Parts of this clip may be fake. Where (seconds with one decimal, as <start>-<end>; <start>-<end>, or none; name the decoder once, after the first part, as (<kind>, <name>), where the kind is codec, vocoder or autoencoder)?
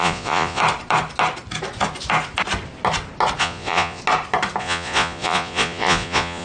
0.0-0.6 (vocoder, Vocos); 3.4-4.0; 4.6-6.4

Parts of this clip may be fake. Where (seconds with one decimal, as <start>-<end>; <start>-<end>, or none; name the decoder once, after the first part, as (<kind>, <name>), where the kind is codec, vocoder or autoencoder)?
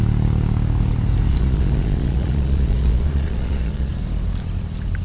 1.3-3.9 (vocoder, Vocos)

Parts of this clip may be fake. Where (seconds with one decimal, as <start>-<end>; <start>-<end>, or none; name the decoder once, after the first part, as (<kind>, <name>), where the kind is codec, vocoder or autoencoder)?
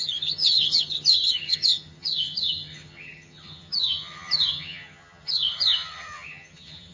0.0-6.9 (vocoder, HiFi-GAN)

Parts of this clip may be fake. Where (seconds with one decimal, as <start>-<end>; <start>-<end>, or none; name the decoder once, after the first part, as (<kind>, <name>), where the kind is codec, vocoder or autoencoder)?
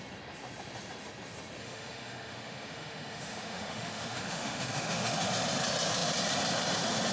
1.6-5.3 (autoencoder, DAC-VAE)